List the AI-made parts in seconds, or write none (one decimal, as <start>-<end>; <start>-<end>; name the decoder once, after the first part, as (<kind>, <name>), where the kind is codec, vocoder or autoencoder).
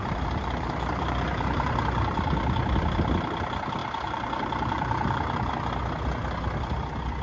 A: 0.0-1.7 (vocoder, BigVGAN v2); 3.8-5.5